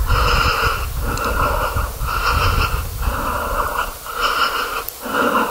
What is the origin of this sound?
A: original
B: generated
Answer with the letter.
A